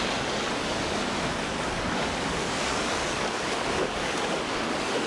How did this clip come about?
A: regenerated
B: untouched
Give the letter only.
A